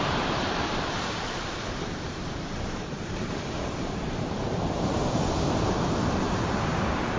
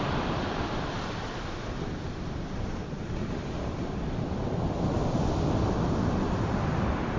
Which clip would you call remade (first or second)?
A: first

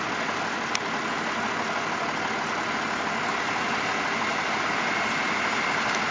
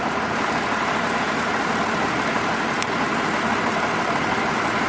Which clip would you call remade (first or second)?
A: second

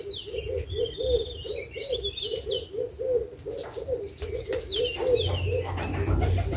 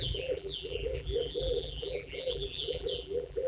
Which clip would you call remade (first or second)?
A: second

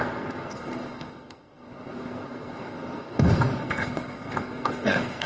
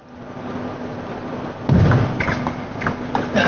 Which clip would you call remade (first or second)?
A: first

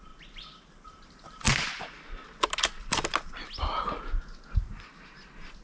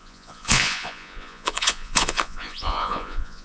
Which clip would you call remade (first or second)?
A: second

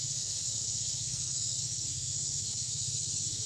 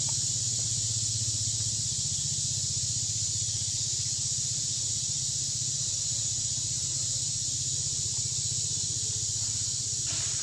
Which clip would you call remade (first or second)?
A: first